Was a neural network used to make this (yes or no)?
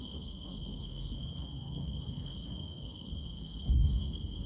yes